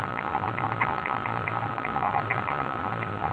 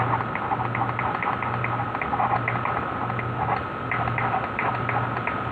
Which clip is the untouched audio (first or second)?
second